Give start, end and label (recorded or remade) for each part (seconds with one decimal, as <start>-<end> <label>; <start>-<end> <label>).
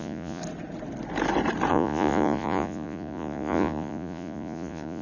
0.0-0.4 remade; 0.4-1.7 recorded; 1.7-5.0 remade